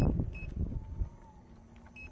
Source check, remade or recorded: recorded